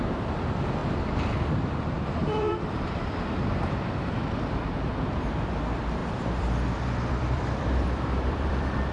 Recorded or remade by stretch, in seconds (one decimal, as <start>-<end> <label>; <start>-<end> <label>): 0.0-0.8 recorded; 0.8-4.8 remade; 4.8-6.0 recorded; 6.0-8.9 remade